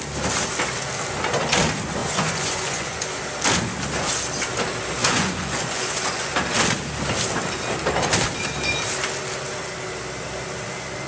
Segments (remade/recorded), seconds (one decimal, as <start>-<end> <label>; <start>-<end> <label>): 0.0-2.0 recorded; 2.0-3.2 remade; 3.2-5.0 recorded; 5.0-6.3 remade; 6.3-11.1 recorded